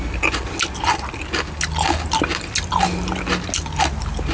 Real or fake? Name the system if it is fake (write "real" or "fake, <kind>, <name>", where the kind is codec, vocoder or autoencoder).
real